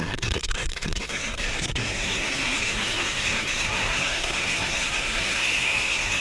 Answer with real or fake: fake